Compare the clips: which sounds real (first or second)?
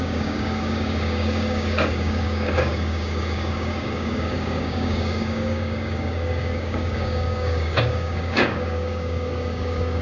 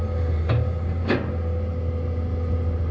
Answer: second